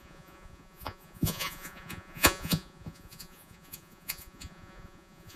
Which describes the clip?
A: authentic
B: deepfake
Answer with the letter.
B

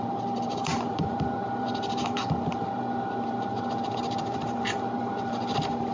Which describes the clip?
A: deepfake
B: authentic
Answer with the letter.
A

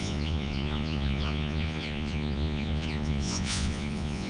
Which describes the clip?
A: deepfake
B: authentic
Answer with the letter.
A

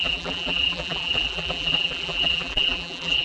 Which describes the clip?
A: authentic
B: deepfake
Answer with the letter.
B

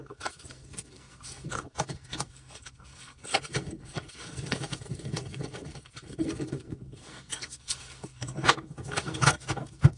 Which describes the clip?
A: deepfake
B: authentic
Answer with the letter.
A